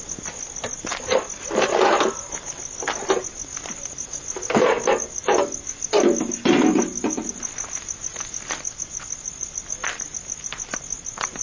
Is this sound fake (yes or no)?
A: no